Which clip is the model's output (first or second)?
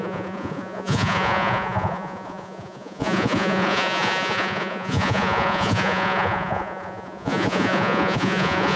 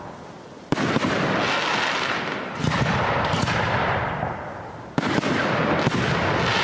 first